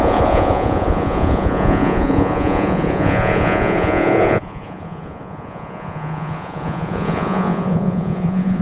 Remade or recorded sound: remade